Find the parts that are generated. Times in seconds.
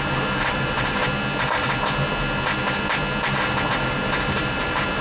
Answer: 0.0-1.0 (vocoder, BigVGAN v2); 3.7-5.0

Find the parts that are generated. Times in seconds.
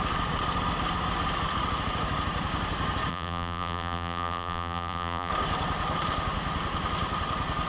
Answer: 3.1-5.3 (vocoder, BigVGAN v2)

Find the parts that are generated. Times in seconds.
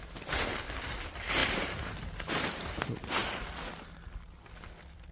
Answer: 1.4-2.8 (vocoder, BigVGAN v2)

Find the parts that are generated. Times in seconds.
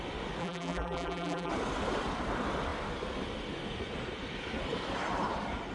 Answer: 0.4-1.5 (vocoder, BigVGAN v2)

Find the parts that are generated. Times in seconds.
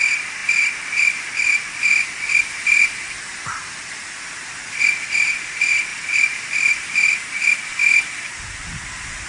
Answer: 5.9-6.9 (vocoder, BigVGAN v2); 7.8-8.6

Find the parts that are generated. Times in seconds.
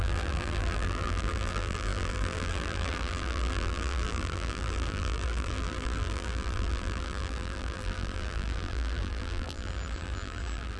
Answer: 0.0-10.8 (vocoder, BigVGAN v2)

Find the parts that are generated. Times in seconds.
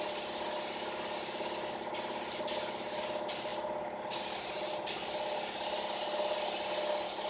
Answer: 3.5-4.2 (vocoder, BigVGAN v2)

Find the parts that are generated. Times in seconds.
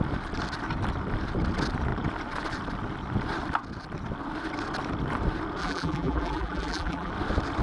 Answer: 5.6-7.1 (vocoder, BigVGAN v2)